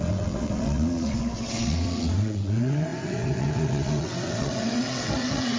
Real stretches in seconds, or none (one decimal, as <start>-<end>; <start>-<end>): none